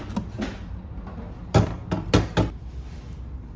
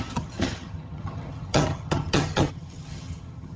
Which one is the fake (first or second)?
second